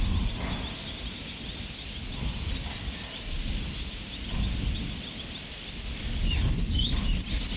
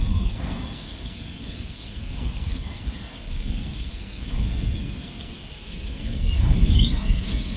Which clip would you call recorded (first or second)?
first